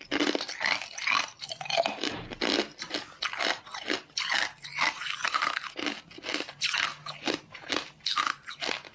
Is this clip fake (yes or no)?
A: no